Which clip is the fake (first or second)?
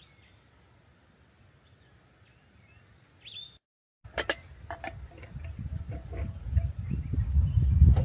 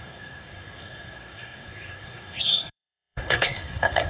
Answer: second